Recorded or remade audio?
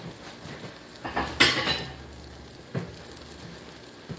recorded